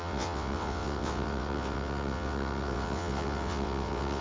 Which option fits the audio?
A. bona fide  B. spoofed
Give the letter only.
B